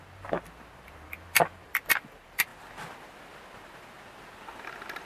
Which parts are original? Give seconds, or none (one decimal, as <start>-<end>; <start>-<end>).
2.5-5.1